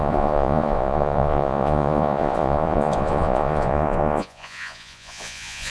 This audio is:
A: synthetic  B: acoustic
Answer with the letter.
A